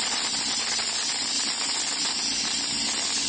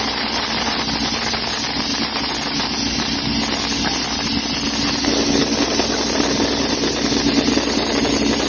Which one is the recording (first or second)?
second